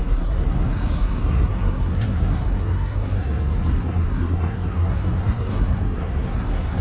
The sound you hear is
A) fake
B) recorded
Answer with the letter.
A